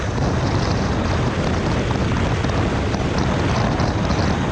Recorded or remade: recorded